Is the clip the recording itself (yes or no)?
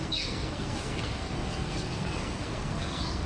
no